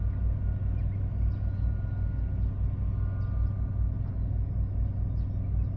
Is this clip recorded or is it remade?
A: recorded